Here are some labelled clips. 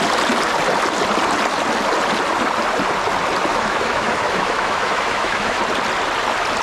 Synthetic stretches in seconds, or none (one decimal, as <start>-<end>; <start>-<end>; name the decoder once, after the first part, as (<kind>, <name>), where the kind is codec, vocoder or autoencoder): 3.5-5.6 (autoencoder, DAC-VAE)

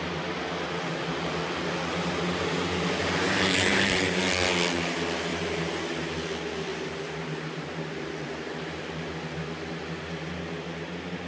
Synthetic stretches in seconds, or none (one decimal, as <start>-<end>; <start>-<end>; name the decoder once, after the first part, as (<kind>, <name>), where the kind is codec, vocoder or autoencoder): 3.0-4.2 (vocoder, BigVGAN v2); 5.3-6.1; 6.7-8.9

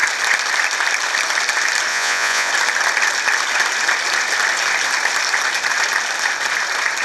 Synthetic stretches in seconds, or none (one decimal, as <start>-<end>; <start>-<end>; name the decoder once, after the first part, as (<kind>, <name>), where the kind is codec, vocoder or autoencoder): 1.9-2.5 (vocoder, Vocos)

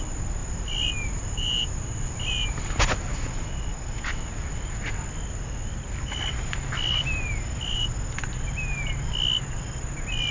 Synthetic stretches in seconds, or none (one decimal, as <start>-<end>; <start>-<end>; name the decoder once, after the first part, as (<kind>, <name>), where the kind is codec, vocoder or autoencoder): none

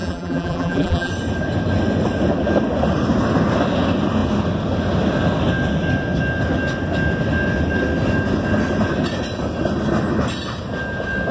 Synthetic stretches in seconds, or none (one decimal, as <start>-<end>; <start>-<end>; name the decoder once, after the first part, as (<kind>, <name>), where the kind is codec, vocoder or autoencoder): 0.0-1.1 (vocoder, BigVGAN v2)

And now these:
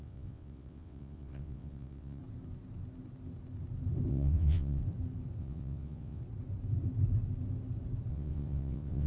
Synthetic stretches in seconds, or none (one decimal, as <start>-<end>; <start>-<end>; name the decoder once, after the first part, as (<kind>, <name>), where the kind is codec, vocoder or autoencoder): 0.0-2.2 (vocoder, WaveNeXt); 4.1-4.8; 5.4-6.2; 8.1-9.1

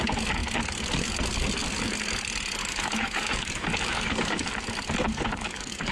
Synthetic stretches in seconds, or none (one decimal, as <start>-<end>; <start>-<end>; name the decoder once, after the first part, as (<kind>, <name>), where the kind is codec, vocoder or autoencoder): 2.6-4.5 (codec, DAC); 5.1-5.9

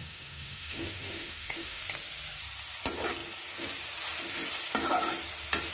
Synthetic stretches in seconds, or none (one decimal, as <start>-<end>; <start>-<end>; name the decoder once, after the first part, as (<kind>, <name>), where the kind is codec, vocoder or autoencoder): 0.0-1.8 (autoencoder, DAC-VAE)